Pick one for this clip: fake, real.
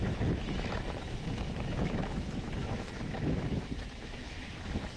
fake